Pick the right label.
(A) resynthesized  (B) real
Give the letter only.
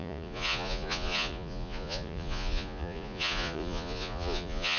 A